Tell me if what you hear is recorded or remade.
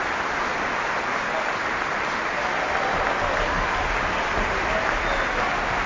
recorded